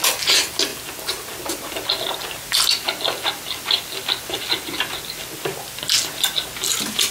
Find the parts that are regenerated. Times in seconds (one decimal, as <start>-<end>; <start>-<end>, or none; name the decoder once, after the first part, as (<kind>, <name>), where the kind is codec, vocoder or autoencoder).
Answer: none